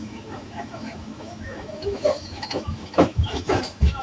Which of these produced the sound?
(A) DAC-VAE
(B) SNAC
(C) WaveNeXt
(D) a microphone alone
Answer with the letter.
A